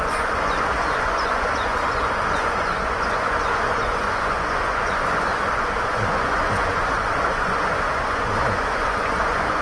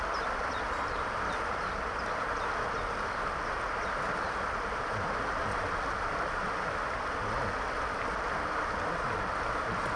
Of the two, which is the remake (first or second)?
first